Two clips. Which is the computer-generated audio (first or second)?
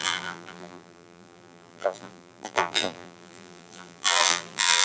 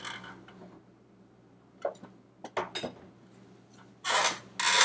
first